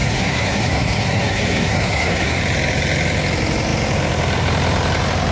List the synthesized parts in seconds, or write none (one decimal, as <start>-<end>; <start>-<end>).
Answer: 0.0-2.4

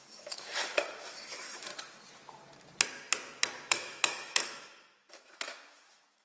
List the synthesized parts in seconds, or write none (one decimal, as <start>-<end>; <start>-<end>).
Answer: 0.0-1.7; 3.7-6.2

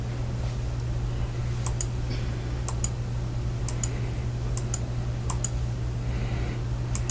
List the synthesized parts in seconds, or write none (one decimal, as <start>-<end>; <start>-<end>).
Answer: none

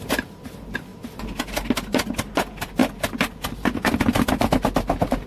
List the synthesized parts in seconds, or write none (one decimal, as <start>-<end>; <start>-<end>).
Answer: none

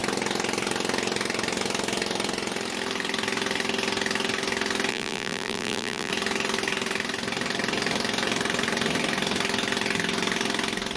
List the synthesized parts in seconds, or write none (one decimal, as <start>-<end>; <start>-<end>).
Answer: 4.9-6.1

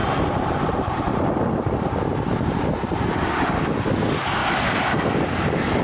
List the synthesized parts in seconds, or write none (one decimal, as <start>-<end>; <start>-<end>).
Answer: 0.0-3.5

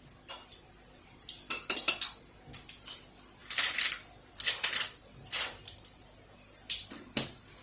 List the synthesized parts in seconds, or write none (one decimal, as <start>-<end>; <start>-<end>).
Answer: none